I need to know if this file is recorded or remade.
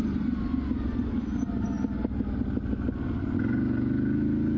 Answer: recorded